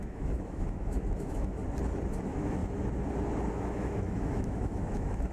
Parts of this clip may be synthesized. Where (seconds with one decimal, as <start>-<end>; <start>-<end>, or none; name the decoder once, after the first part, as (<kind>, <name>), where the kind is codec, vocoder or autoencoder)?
0.0-1.6 (autoencoder, DAC-VAE); 2.2-2.6; 3.5-5.3